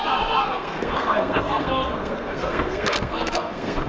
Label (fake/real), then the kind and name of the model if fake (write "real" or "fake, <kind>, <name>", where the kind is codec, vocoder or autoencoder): fake, codec, SNAC